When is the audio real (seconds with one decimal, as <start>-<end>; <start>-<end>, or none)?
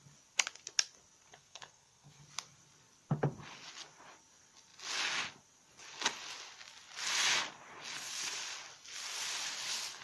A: 0.0-1.3; 2.2-10.0